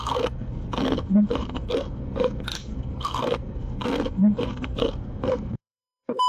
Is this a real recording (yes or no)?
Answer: no